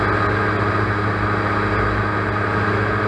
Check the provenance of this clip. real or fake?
real